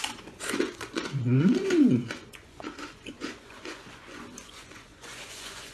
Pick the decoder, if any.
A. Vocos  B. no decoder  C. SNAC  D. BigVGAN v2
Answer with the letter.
A